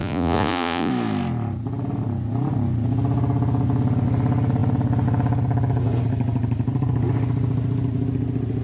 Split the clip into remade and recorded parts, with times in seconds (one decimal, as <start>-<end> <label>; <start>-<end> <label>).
0.0-0.9 remade; 0.9-8.6 recorded